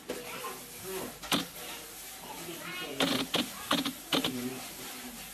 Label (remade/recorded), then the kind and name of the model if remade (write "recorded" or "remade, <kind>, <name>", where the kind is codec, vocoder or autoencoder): recorded